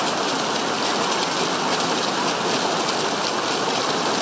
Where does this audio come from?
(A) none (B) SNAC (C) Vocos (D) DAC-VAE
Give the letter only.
A